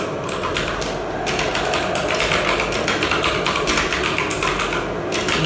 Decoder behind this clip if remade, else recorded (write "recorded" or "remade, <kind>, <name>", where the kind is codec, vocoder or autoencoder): recorded